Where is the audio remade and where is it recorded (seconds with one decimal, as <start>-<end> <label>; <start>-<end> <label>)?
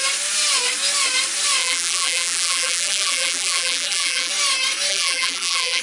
0.0-1.6 recorded; 1.6-4.3 remade; 4.3-4.9 recorded; 4.9-5.8 remade